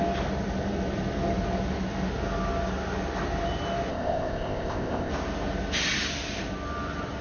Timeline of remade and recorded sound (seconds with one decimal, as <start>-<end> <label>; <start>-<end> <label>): 0.0-3.9 recorded; 3.9-5.1 remade; 5.1-7.2 recorded